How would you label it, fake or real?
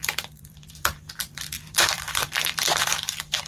fake